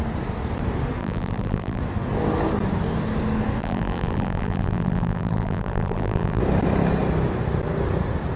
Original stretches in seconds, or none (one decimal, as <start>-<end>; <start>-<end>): 0.0-1.0; 1.8-3.6; 6.4-8.4